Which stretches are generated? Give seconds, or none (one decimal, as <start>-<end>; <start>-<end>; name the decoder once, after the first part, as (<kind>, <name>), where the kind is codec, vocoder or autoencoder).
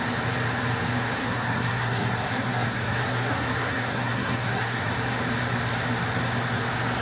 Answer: 1.2-4.9 (codec, SNAC)